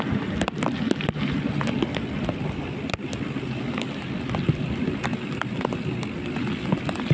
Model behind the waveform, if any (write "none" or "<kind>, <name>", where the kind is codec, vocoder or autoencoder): none